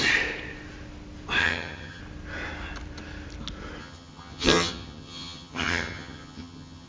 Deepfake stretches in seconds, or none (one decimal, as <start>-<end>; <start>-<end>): 1.4-2.0; 3.8-6.9